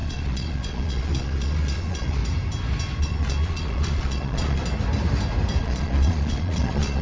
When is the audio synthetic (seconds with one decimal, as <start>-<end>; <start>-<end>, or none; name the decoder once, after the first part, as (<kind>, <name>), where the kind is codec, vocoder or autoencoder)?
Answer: 0.0-2.2 (vocoder, Vocos); 3.0-4.6; 5.6-7.0